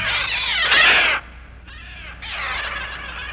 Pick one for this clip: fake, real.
real